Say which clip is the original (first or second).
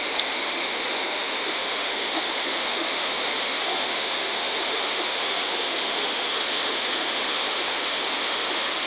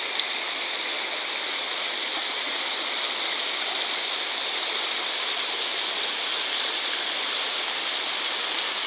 second